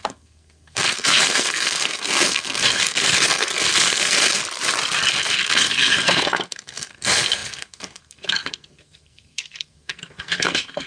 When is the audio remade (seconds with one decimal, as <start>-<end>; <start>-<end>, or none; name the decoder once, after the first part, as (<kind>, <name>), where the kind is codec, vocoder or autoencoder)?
0.0-4.4 (codec, SNAC); 5.1-10.9